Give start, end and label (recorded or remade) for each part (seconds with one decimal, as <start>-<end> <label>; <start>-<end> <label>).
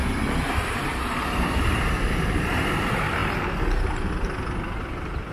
0.0-1.0 recorded; 1.0-1.9 remade; 1.9-5.3 recorded